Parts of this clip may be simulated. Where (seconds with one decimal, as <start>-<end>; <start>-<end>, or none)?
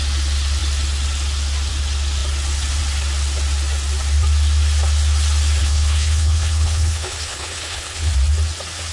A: 5.6-8.1